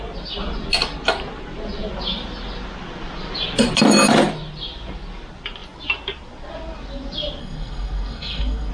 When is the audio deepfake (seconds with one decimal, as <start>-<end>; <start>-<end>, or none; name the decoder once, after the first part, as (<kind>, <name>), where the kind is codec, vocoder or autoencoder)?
7.4-8.7 (codec, SNAC)